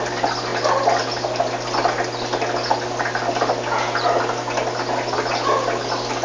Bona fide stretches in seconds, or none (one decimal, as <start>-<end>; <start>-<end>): 0.0-6.2